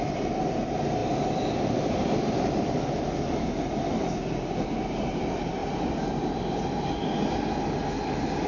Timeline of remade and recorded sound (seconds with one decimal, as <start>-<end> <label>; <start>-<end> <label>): 0.0-8.5 recorded

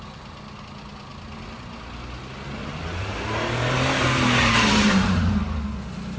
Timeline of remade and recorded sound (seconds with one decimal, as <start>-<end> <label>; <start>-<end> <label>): 0.0-2.6 recorded; 2.6-5.6 remade; 5.6-6.2 recorded

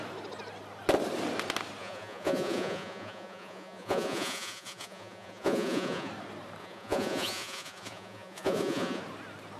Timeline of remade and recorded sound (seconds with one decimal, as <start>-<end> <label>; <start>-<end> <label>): 0.0-1.8 recorded; 1.8-6.1 remade; 6.1-6.6 recorded; 6.6-9.0 remade; 9.0-9.6 recorded

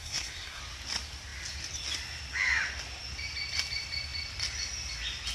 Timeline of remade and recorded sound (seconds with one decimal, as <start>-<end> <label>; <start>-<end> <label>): 0.0-0.6 remade; 0.6-5.3 recorded

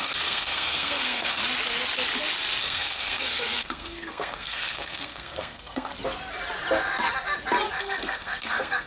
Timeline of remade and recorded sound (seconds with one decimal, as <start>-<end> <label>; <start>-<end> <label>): 0.0-1.4 remade; 1.4-2.6 recorded; 2.6-5.9 remade; 5.9-7.8 recorded; 7.8-8.9 remade